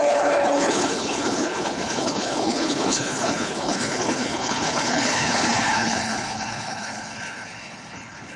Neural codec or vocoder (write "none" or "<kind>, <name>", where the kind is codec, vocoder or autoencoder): codec, HILCodec